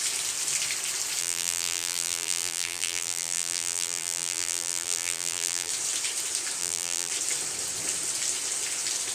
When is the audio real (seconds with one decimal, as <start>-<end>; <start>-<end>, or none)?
0.0-1.2; 5.7-6.6; 7.1-9.1